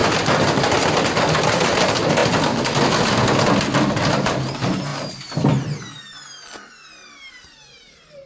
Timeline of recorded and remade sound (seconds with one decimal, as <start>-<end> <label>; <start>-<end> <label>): 0.0-1.5 recorded; 1.5-2.2 remade; 2.2-4.1 recorded; 4.1-4.9 remade; 4.9-7.3 recorded; 7.3-8.3 remade